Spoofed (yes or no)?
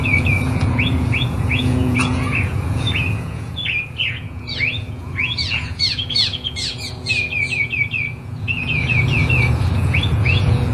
yes